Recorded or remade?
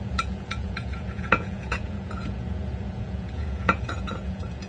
remade